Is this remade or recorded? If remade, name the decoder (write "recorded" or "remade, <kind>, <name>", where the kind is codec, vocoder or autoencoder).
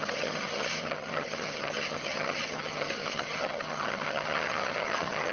remade, vocoder, HiFi-GAN